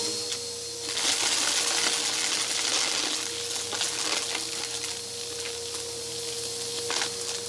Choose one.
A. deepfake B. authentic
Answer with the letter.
B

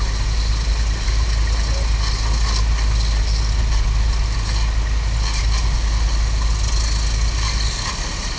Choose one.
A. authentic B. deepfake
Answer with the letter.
A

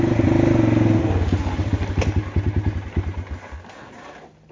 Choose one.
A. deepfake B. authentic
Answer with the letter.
B